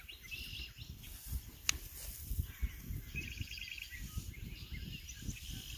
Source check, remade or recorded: recorded